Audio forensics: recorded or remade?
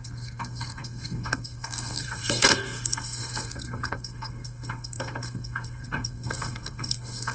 remade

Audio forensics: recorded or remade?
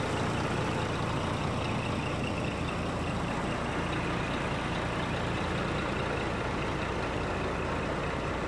recorded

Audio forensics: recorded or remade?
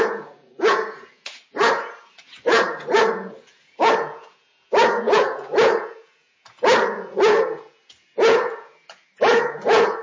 remade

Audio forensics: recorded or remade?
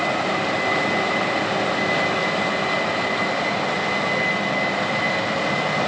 recorded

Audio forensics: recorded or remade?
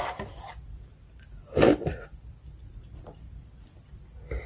recorded